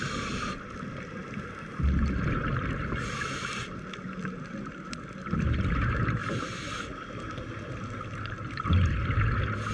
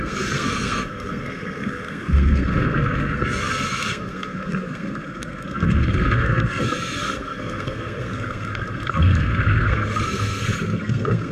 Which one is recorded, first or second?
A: first